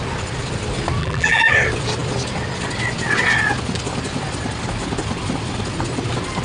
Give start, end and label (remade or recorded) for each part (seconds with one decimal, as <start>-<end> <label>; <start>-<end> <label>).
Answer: 0.0-1.0 recorded; 1.0-1.5 remade; 1.5-6.4 recorded